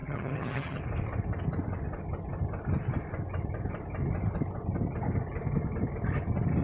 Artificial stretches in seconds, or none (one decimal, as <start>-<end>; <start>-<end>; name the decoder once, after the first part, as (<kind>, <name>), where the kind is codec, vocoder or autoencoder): 0.0-0.8 (vocoder, HiFi-GAN)